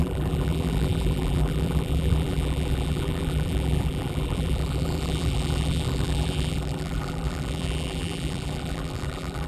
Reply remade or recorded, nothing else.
remade